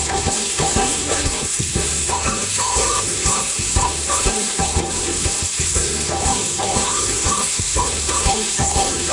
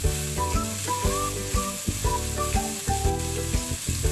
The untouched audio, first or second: second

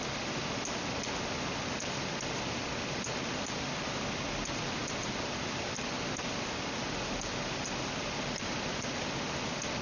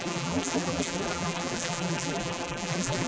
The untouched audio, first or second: first